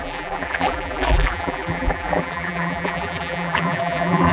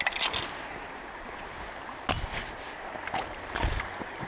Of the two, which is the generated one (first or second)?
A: first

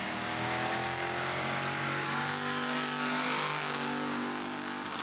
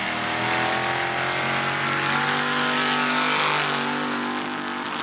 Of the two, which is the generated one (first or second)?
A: first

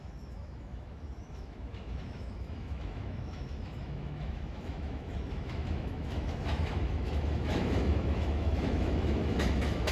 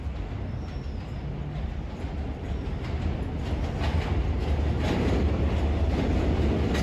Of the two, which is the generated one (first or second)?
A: first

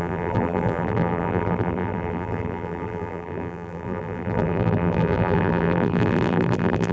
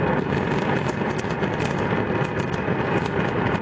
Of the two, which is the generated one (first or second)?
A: first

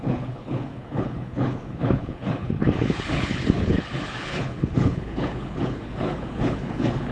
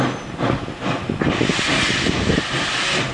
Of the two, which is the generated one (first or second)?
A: first